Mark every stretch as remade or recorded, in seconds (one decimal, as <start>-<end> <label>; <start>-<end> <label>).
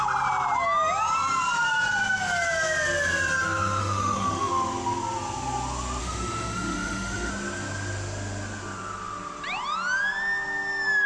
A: 0.0-3.8 recorded; 3.8-4.5 remade; 4.5-6.0 recorded; 6.0-7.3 remade; 7.3-11.1 recorded